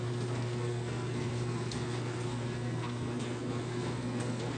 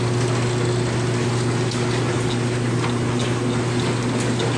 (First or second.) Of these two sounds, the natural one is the second